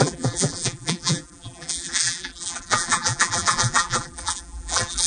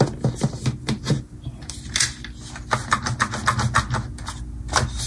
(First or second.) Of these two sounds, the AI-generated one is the first